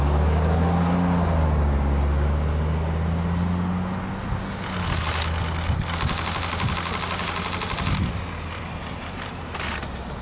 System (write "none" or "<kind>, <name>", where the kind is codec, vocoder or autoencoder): none